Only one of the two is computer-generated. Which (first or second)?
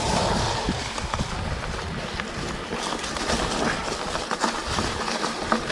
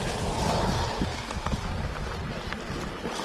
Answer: first